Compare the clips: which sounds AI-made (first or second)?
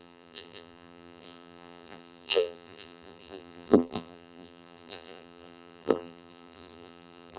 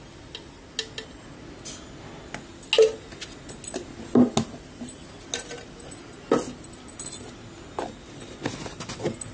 first